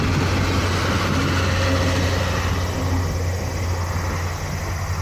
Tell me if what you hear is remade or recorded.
recorded